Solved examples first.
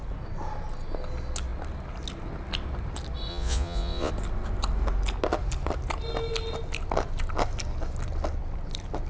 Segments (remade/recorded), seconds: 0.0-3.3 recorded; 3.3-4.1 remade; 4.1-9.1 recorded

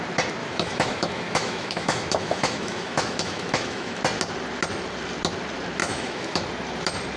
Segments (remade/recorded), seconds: 0.0-0.4 recorded; 0.4-4.0 remade; 4.0-5.8 recorded; 5.8-6.4 remade; 6.4-7.2 recorded

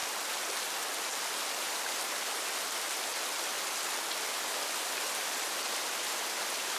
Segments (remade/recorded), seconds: 0.0-4.0 recorded; 4.0-6.8 remade